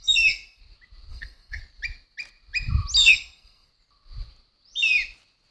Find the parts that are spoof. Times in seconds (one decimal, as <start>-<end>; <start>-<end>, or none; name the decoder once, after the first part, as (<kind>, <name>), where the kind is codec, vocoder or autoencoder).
0.0-0.6 (codec, SNAC); 1.1-1.6; 3.0-3.7